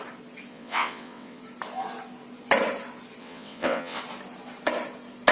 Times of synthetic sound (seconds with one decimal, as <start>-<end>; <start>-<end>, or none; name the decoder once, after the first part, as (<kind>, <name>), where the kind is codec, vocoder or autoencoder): 0.5-1.4 (vocoder, WaveNeXt); 3.2-4.0